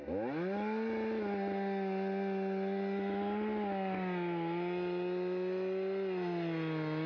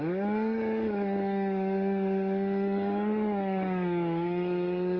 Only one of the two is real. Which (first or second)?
first